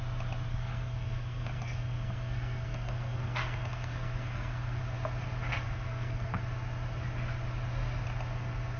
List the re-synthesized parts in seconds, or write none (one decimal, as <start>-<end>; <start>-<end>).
0.5-4.8; 5.5-6.4